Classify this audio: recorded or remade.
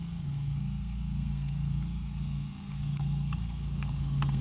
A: remade